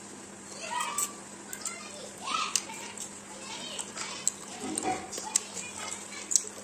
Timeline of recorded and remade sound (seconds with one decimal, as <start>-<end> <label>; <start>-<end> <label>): 0.0-6.6 recorded